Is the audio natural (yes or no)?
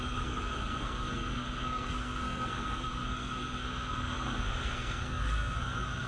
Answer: no